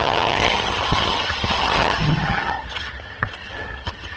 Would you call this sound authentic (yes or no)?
no